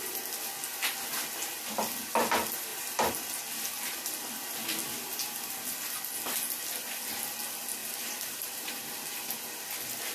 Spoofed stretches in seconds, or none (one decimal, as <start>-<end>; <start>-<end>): 2.7-3.4; 7.8-8.7